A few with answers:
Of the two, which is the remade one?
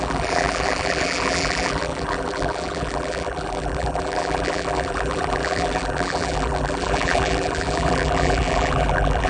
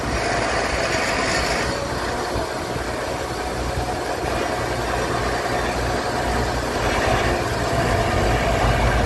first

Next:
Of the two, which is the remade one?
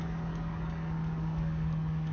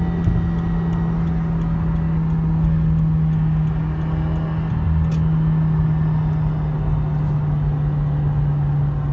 first